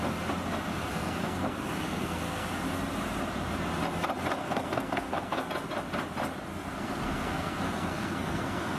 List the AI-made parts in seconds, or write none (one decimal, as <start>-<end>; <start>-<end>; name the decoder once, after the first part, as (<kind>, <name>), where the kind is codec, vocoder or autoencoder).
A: 0.9-2.5 (codec, SNAC); 4.4-5.5; 6.5-8.8